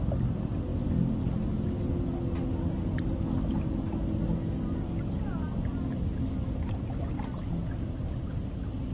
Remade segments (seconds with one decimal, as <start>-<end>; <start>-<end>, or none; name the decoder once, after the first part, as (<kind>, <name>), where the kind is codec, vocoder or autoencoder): none